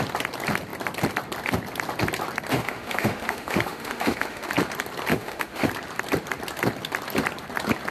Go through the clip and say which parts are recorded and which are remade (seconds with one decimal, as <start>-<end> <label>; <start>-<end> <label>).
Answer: 0.0-2.5 recorded; 2.5-4.5 remade; 4.5-5.1 recorded; 5.1-5.7 remade; 5.7-7.9 recorded